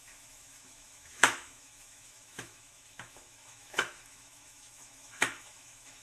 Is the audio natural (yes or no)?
no